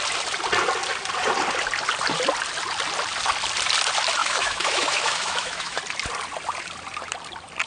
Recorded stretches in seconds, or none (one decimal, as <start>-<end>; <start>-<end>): 0.0-4.2; 5.8-7.7